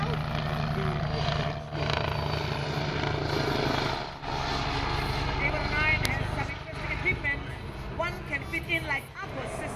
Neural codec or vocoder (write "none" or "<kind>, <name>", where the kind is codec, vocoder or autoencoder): none